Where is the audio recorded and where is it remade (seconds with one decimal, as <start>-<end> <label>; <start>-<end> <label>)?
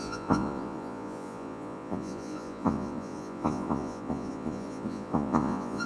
0.0-5.9 remade